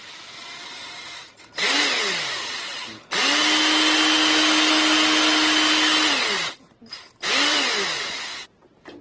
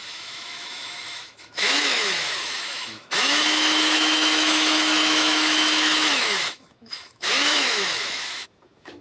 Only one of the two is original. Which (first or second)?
first